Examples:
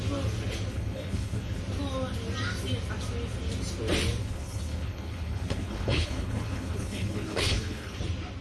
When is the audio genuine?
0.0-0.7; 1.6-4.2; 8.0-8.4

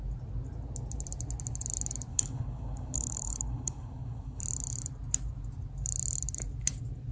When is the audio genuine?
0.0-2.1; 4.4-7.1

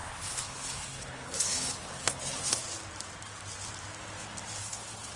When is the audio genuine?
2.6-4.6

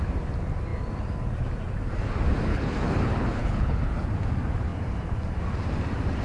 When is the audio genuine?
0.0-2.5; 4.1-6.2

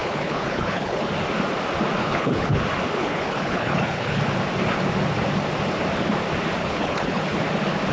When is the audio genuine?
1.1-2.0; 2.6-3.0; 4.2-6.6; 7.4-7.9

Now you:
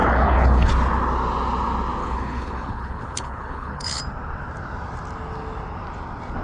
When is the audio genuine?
0.7-2.0; 4.0-6.4

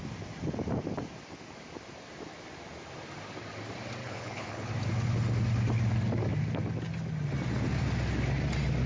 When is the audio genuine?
0.0-4.0; 4.7-8.9

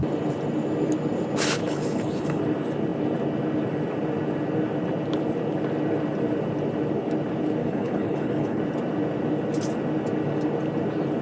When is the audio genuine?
0.0-1.6; 2.4-7.6; 8.6-11.2